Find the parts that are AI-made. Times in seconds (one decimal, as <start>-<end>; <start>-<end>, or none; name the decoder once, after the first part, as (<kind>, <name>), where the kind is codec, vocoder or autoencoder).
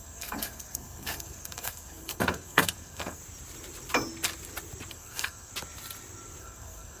0.0-3.2 (codec, SNAC); 4.9-5.5; 6.4-7.0